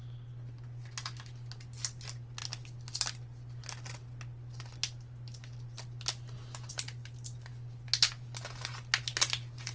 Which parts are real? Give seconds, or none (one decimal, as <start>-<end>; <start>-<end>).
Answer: 0.0-9.7